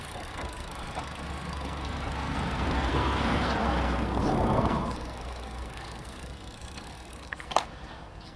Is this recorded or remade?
remade